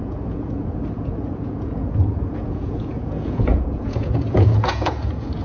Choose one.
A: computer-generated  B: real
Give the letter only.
A